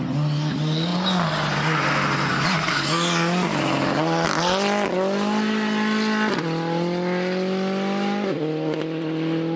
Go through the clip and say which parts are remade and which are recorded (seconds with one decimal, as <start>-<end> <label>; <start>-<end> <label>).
0.0-9.6 recorded